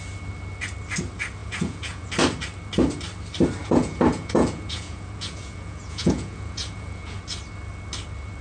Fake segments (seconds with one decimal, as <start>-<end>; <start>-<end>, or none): 1.4-2.1; 3.6-7.2